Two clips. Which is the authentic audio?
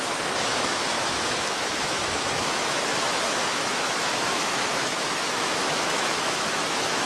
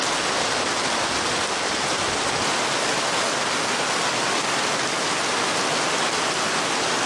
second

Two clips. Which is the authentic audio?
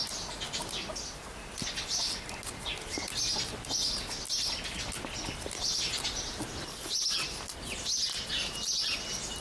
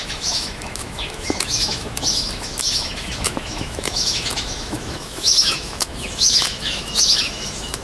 first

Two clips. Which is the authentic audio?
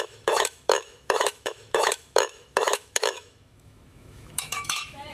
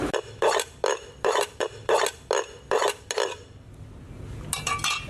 second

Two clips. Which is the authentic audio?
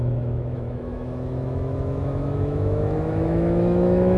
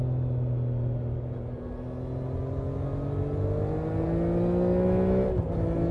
second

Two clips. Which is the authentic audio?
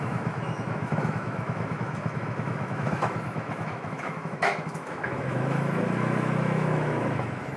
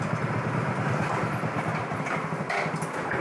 second